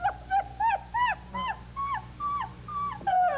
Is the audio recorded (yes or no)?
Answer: yes